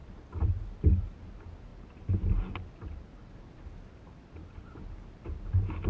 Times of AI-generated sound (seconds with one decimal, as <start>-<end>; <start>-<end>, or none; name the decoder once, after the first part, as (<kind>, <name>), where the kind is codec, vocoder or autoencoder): none